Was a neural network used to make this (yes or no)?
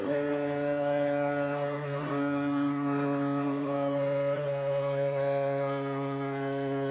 yes